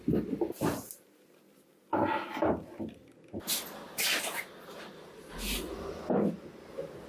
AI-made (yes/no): no